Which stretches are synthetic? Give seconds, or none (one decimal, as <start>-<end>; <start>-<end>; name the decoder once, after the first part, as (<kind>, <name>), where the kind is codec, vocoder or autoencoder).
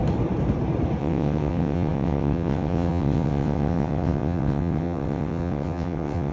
1.0-6.3 (vocoder, WaveNeXt)